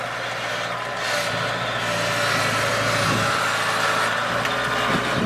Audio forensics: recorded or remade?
recorded